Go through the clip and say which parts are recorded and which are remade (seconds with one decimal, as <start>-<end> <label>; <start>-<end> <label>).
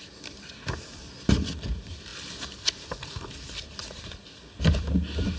0.0-2.1 remade; 2.1-4.1 recorded; 4.1-5.4 remade